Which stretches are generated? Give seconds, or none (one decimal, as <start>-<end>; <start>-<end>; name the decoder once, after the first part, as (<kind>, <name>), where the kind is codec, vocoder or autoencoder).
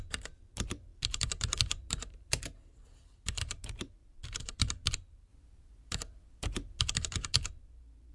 0.0-2.3 (vocoder, BigVGAN v2); 3.3-5.3; 6.8-8.1